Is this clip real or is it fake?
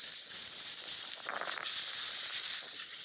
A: real